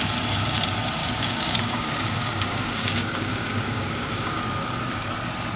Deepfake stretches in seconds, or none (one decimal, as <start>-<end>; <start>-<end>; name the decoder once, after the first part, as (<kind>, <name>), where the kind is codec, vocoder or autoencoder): 1.0-4.4 (codec, DAC)